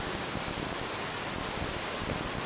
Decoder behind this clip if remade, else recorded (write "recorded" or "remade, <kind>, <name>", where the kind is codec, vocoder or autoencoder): remade, vocoder, BigVGAN v2